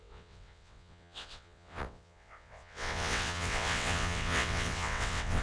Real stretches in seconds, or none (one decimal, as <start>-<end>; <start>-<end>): none